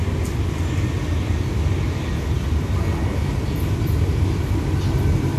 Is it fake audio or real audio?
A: real